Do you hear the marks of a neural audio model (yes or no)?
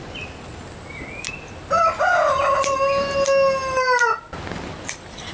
no